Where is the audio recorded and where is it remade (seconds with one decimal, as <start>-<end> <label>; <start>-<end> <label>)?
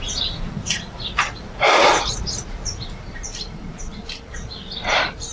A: 0.0-1.8 recorded; 1.8-3.5 remade; 3.5-5.3 recorded